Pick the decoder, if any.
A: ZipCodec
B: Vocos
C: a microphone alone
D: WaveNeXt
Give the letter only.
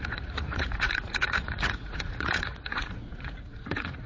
B